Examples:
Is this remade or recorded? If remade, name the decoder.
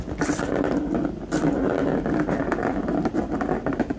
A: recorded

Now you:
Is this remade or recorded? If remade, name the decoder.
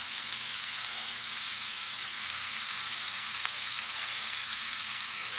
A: remade, codec, SNAC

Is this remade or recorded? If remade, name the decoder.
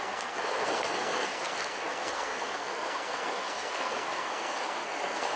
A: remade, codec, SNAC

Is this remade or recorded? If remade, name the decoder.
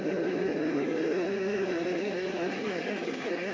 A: remade, codec, SNAC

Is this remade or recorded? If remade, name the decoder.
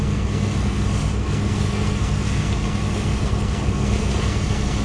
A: remade, codec, SNAC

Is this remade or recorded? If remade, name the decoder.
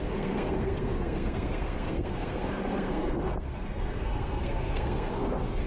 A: remade, codec, SNAC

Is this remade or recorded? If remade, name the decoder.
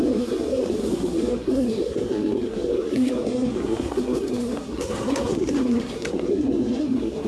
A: remade, codec, SNAC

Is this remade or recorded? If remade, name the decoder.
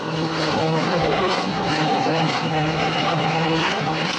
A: remade, codec, SNAC